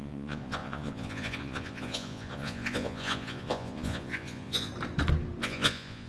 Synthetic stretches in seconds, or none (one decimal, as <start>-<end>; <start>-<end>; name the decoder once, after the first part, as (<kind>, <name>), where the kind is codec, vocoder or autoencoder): 0.0-4.7 (vocoder, Vocos); 5.4-6.1